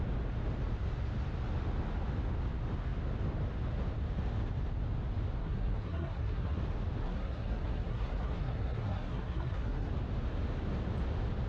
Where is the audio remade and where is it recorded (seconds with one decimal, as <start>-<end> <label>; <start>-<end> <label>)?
0.0-5.4 recorded; 5.4-6.6 remade; 6.6-7.0 recorded; 7.0-9.9 remade; 9.9-11.5 recorded